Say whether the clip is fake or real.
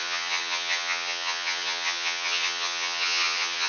fake